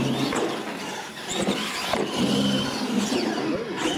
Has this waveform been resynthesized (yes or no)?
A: no